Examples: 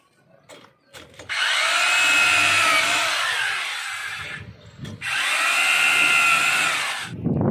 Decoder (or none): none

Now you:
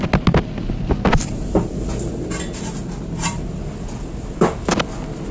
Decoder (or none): none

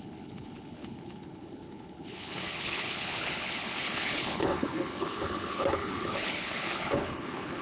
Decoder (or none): codec, HILCodec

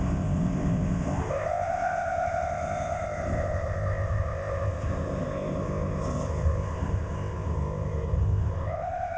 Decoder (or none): codec, ZipCodec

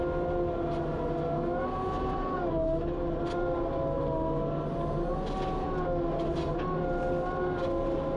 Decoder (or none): none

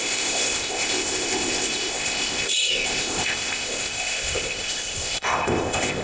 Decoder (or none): codec, ZipCodec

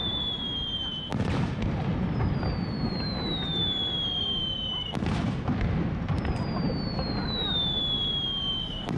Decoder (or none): none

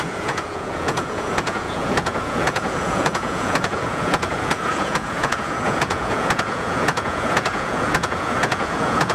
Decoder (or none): vocoder, Vocos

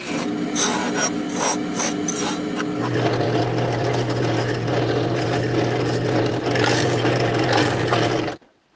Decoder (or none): none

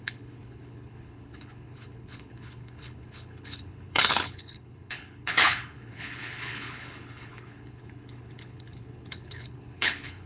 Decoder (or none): codec, HILCodec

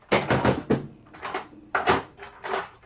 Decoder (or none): none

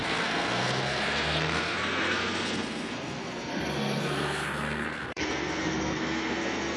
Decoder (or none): codec, SNAC